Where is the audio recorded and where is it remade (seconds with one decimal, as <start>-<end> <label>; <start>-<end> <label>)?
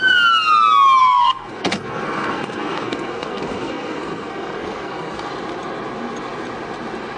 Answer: 0.0-1.0 recorded; 1.0-5.3 remade; 5.3-7.2 recorded